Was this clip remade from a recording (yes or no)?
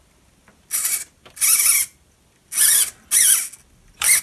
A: no